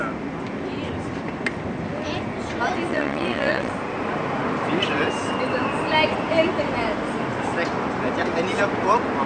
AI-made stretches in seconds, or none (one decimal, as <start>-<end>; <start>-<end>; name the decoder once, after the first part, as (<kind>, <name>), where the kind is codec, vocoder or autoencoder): 2.9-3.7 (vocoder, WaveNeXt)